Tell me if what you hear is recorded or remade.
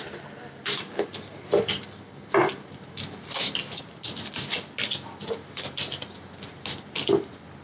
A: recorded